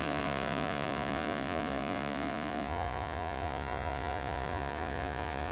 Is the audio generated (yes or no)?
yes